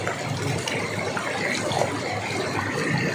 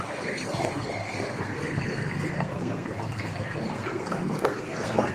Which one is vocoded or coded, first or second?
second